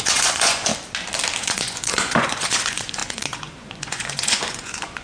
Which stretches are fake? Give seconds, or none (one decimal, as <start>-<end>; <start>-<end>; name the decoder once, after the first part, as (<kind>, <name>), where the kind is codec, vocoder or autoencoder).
0.0-0.7 (vocoder, Vocos); 1.4-5.0

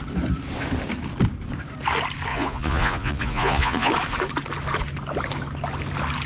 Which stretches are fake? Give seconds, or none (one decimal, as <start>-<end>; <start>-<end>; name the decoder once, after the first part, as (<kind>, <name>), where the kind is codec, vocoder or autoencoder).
2.3-3.9 (vocoder, Vocos)

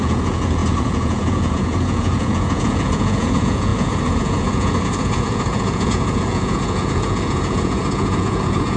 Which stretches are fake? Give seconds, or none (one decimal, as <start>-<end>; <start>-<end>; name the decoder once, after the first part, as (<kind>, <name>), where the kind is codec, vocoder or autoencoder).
0.0-8.8 (vocoder, Vocos)

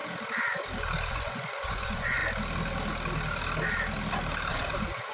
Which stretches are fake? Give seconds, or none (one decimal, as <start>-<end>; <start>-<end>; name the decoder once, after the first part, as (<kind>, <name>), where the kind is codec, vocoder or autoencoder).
1.1-2.2 (vocoder, Vocos); 4.5-5.1

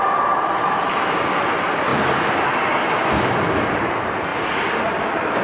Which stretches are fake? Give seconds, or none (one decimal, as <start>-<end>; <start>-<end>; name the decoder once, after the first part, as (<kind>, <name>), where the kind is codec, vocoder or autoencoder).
none

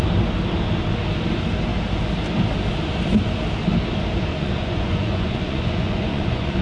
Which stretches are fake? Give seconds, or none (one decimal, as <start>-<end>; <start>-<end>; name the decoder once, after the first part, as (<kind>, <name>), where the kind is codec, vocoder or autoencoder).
4.3-6.6 (vocoder, Vocos)

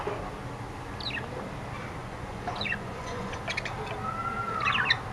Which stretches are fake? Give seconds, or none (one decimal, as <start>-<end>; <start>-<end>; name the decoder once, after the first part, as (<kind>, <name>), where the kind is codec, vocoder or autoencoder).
2.0-3.4 (vocoder, Vocos)